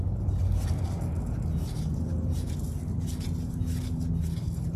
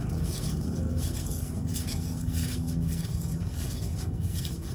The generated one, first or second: second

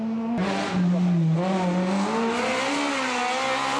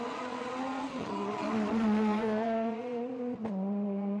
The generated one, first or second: second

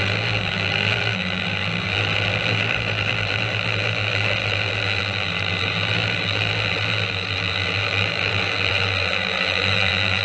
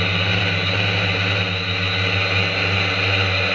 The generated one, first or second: first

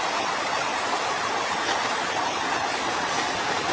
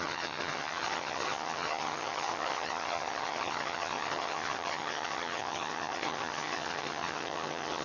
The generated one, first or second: second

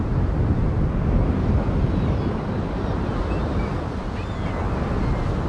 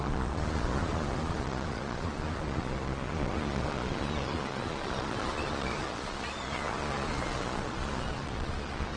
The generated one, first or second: second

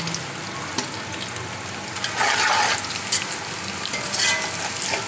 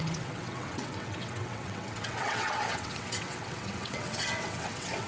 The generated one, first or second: second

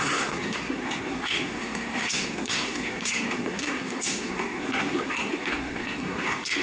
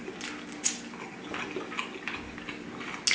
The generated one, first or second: first